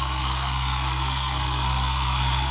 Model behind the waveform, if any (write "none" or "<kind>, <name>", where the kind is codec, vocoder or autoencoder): codec, SNAC